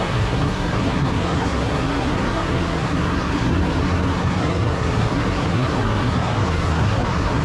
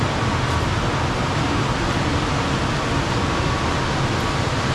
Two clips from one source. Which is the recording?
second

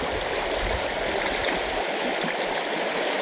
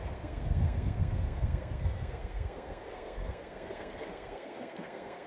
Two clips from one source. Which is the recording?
first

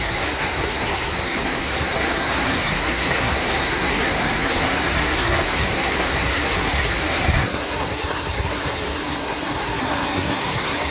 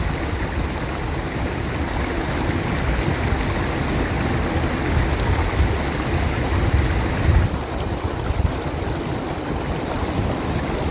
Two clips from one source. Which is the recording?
second